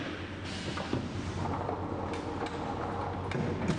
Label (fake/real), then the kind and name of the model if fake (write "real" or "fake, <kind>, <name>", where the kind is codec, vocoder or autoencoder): real